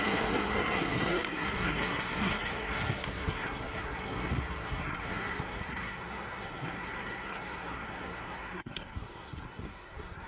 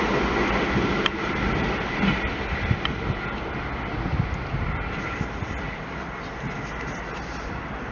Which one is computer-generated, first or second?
first